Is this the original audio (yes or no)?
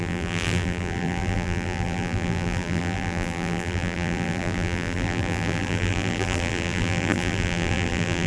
no